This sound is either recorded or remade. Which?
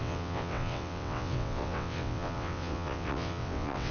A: remade